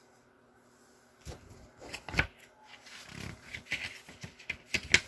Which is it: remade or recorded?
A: recorded